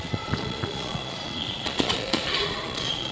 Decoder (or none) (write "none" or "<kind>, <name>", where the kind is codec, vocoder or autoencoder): vocoder, Vocos